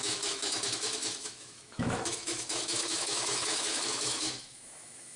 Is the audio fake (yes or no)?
yes